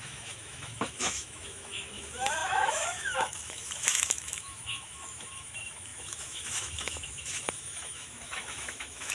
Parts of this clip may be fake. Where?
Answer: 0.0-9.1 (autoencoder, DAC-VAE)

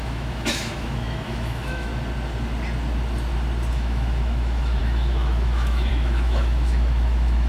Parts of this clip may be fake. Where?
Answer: 0.0-1.9 (autoencoder, DAC-VAE); 3.7-7.5

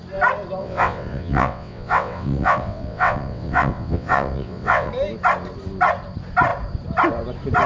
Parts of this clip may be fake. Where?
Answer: 0.6-4.9 (vocoder, WaveNeXt)

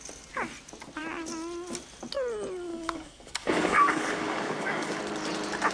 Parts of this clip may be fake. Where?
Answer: 2.7-5.0 (codec, DAC)

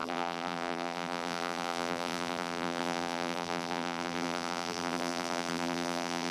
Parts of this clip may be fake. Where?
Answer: 0.0-6.3 (vocoder, BigVGAN v2)

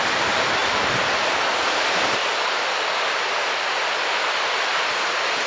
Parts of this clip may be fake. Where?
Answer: 0.6-1.6 (vocoder, BigVGAN v2); 2.2-4.1

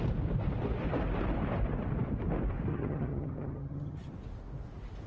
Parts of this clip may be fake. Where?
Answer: 2.7-4.1 (vocoder, HiFi-GAN)

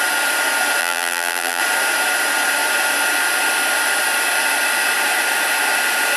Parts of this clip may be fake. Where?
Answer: 0.8-1.6 (vocoder, BigVGAN v2)